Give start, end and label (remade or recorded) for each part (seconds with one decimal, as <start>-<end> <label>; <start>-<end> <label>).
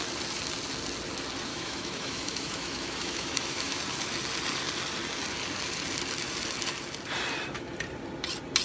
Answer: 0.0-1.5 recorded; 1.5-3.8 remade; 3.8-8.6 recorded